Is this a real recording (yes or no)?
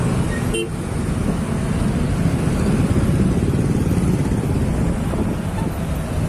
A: yes